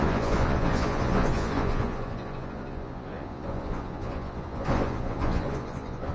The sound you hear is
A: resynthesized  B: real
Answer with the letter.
A